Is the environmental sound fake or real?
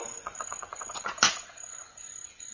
fake